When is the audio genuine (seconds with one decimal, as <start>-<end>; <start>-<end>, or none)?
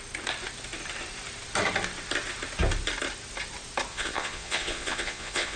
0.0-3.9